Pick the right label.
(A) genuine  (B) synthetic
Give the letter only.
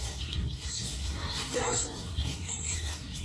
B